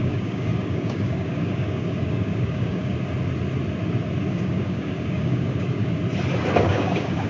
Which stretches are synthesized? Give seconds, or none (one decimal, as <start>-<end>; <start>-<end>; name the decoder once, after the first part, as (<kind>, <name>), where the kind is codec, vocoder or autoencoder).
0.0-2.9 (codec, DAC); 4.3-6.0; 6.6-7.3